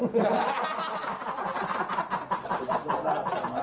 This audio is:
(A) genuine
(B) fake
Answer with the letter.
A